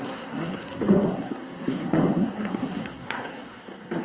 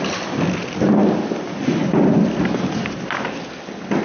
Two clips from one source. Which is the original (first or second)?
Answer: second